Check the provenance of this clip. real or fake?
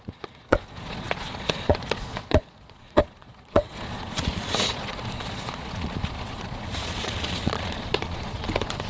fake